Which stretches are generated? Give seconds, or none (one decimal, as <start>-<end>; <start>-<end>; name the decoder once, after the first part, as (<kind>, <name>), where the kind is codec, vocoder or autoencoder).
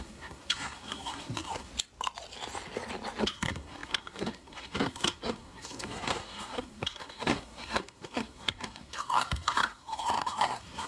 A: 0.0-1.7 (codec, SNAC); 3.2-10.9